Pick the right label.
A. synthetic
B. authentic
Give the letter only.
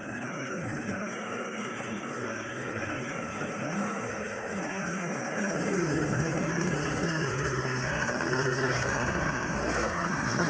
A